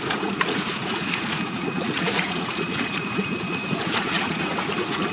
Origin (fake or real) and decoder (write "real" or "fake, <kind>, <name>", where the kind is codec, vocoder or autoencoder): fake, vocoder, Vocos